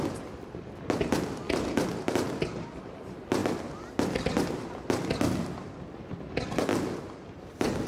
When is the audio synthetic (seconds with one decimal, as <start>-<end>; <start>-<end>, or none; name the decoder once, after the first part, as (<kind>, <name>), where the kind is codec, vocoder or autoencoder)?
none